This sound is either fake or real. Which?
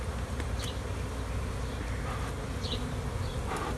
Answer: real